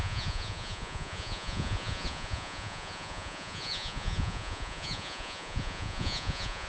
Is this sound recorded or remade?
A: remade